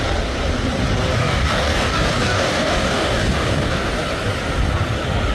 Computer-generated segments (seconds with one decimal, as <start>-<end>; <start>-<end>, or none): 1.2-3.9